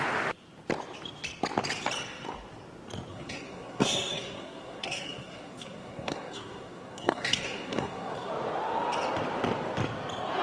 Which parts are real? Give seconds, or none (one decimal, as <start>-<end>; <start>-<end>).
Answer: 0.0-3.1; 8.3-10.4